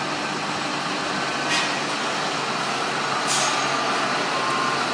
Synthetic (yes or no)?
no